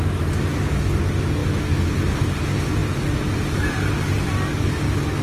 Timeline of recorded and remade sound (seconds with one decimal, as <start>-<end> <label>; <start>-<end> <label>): 0.0-1.4 recorded; 1.4-1.9 remade; 1.9-5.2 recorded